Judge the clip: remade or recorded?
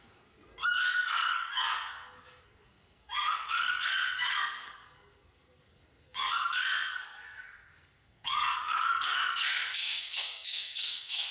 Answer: remade